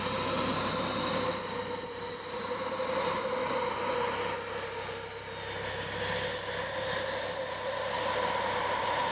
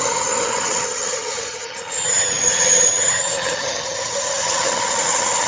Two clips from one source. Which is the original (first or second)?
first